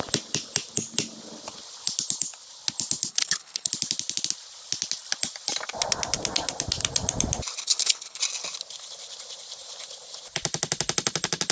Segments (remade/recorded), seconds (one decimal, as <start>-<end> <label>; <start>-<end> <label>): 0.0-3.1 recorded; 3.1-3.7 remade; 3.7-7.6 recorded; 7.6-8.2 remade; 8.2-11.5 recorded